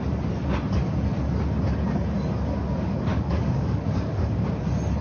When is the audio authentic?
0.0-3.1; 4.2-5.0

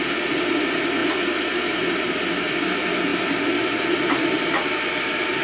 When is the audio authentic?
0.0-5.4

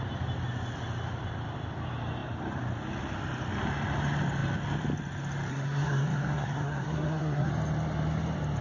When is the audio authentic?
0.0-5.5; 7.5-8.6

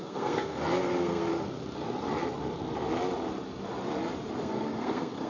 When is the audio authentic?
1.3-4.4

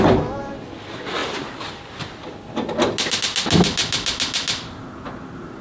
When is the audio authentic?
0.0-5.6